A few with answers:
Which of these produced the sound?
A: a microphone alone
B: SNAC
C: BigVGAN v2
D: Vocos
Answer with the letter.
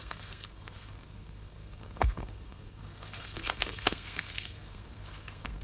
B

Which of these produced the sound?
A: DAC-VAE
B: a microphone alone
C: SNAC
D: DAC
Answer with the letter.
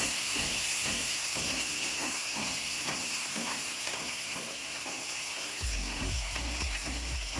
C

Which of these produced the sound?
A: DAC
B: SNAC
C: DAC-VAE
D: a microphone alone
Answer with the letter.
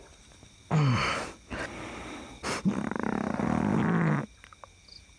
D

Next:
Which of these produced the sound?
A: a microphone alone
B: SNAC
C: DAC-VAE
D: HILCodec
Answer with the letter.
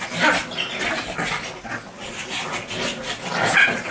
A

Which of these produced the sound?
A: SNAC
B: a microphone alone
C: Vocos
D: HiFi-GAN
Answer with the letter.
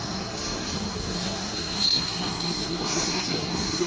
A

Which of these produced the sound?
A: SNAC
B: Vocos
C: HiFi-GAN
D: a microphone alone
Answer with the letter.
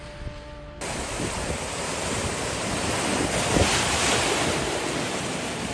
D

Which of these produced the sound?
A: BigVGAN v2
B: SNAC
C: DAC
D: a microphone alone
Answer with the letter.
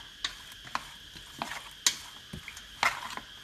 D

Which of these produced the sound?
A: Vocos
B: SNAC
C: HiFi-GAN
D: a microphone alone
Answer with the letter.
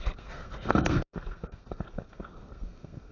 B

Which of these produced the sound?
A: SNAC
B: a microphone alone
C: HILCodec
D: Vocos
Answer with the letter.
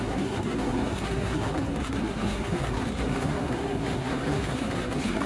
A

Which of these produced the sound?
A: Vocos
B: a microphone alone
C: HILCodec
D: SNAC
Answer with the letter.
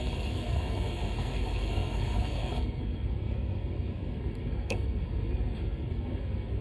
D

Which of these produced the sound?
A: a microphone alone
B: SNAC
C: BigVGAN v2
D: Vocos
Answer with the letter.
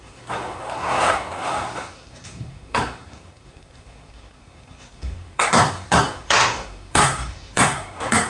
B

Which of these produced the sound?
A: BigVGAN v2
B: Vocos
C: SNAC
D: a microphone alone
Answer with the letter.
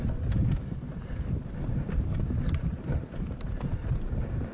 D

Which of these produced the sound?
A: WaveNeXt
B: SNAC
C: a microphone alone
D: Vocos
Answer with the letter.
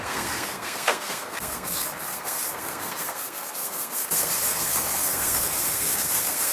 B